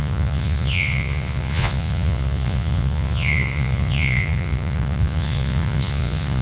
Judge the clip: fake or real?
fake